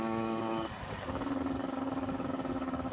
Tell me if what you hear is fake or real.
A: fake